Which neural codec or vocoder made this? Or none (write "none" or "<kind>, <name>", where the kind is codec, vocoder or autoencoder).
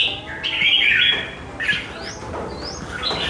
none